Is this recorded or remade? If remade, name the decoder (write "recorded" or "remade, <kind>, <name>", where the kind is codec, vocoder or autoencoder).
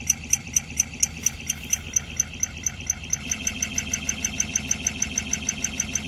recorded